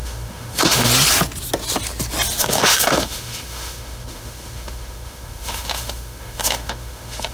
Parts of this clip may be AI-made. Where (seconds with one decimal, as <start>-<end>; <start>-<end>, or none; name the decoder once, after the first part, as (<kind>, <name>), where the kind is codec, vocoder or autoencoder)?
0.0-0.9 (autoencoder, DAC-VAE); 2.4-7.3